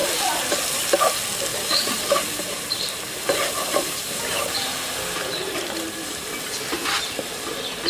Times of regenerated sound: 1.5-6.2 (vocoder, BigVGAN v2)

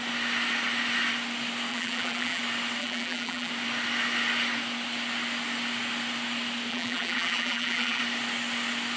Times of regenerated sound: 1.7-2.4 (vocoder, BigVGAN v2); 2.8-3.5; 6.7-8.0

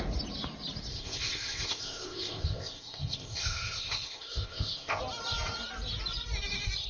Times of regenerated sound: 0.9-5.0 (codec, ZipCodec)

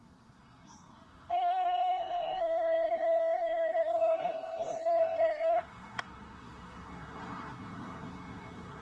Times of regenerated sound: 0.0-8.8 (codec, SNAC)

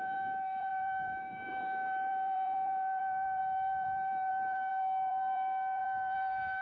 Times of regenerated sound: 0.0-6.6 (vocoder, BigVGAN v2)

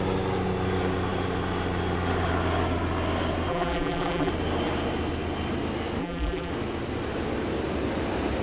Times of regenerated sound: 3.5-4.3 (vocoder, BigVGAN v2); 6.0-6.5